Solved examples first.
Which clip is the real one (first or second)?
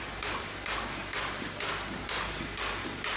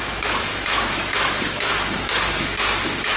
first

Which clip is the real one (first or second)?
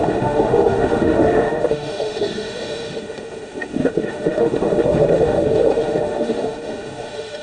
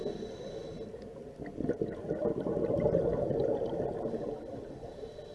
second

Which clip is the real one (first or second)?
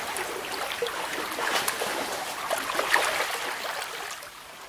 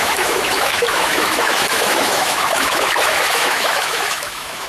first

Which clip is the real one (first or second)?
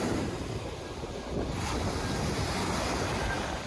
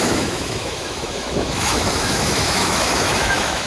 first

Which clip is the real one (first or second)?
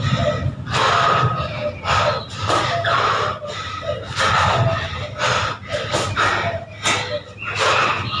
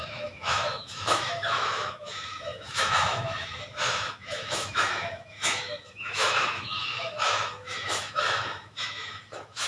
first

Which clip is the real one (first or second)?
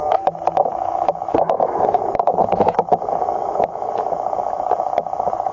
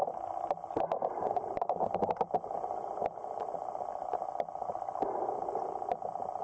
second